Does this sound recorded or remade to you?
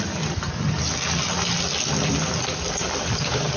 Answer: recorded